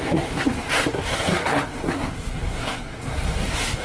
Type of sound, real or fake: fake